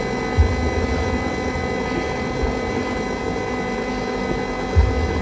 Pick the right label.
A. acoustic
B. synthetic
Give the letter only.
A